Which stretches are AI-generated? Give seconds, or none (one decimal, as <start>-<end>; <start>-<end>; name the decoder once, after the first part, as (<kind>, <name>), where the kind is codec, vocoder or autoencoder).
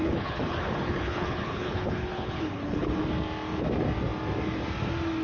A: 0.0-3.1 (codec, HILCodec)